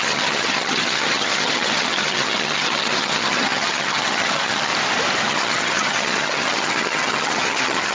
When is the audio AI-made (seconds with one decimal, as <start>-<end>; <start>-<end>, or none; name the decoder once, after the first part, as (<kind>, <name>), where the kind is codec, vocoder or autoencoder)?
0.0-4.7 (vocoder, HiFi-GAN); 5.3-7.9